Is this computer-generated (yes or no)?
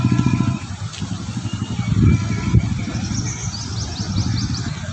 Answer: no